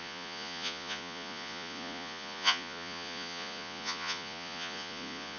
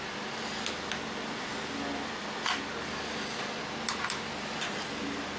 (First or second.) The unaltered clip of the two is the second